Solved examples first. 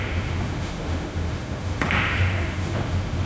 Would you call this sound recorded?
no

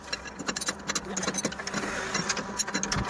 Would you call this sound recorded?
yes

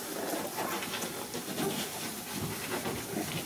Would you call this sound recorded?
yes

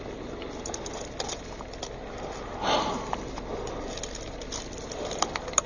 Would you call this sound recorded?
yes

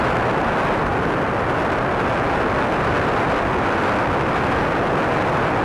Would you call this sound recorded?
yes